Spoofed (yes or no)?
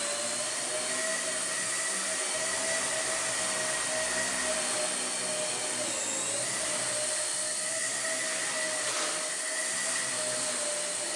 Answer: no